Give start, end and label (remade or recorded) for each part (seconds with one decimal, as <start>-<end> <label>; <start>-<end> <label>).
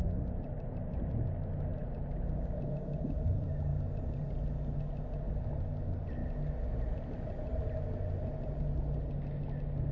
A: 0.0-9.9 recorded